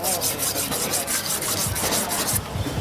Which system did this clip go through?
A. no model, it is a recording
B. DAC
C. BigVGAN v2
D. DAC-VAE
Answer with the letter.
A